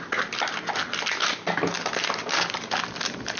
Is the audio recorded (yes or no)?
yes